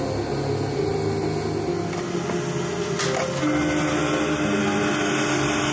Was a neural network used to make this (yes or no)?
no